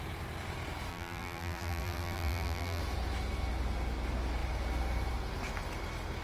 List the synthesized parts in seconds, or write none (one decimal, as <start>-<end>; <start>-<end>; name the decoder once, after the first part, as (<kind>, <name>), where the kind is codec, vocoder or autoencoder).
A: 0.9-2.8 (vocoder, BigVGAN v2)